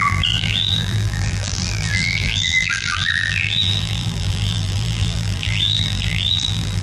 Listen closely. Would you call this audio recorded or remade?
remade